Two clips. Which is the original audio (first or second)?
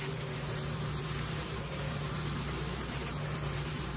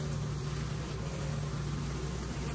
second